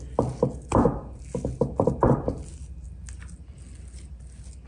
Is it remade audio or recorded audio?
recorded